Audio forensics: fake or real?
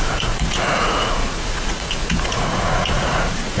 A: fake